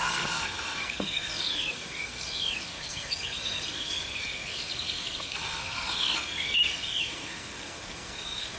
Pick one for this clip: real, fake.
fake